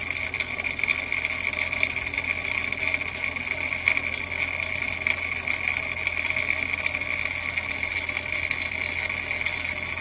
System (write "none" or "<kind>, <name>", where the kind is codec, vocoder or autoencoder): none